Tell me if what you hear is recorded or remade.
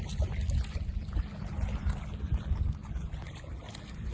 remade